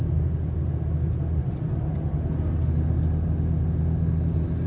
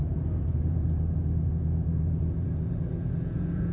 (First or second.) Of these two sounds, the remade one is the second